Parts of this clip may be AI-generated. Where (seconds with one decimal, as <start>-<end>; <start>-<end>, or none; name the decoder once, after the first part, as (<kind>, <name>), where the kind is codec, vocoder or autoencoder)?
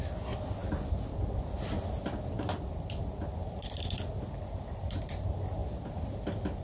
none